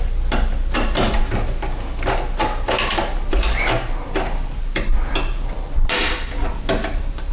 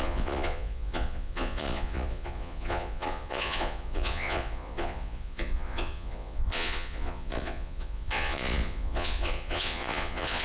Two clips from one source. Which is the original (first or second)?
first